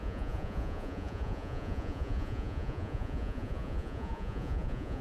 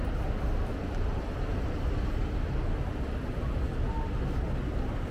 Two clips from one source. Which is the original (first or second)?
second